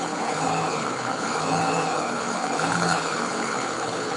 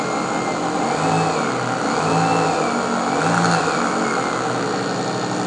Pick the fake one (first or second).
first